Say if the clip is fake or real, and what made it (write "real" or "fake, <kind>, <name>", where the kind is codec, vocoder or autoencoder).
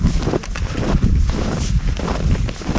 real